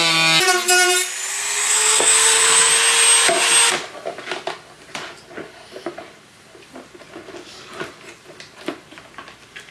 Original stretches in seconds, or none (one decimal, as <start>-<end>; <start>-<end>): 0.0-1.3; 2.7-9.7